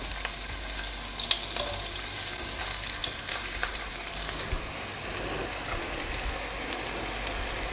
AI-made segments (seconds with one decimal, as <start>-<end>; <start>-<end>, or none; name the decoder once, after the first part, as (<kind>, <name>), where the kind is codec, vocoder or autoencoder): 3.0-4.7 (vocoder, BigVGAN v2)